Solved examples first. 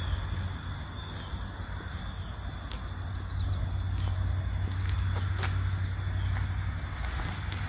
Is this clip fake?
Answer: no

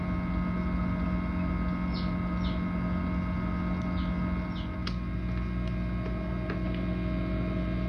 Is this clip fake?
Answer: no